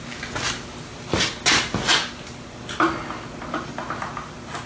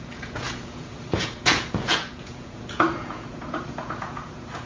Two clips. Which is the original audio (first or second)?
first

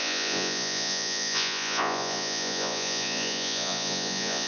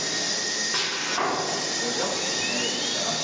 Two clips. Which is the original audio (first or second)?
second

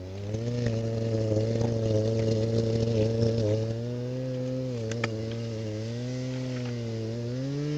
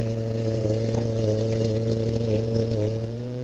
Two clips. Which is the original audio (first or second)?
first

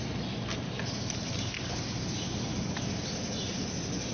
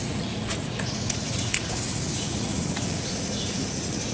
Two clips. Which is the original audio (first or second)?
first